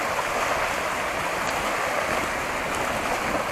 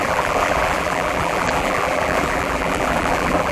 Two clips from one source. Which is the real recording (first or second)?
first